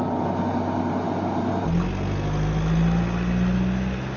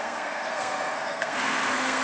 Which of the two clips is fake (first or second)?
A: second